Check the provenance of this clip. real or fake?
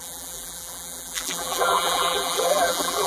fake